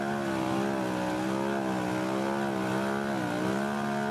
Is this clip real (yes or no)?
yes